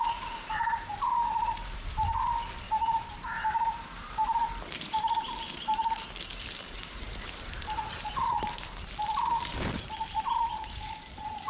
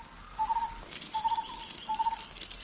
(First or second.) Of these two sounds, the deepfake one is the first